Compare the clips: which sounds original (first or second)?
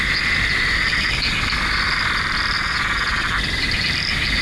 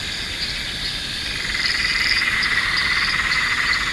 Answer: first